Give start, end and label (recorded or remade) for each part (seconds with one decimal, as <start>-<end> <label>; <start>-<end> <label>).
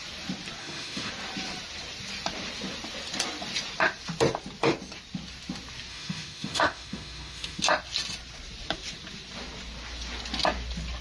0.0-0.6 recorded; 0.6-1.1 remade; 1.1-5.9 recorded; 5.9-7.6 remade; 7.6-11.0 recorded